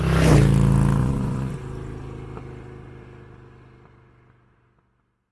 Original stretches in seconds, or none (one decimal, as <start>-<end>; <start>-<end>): 0.0-1.0; 1.5-5.3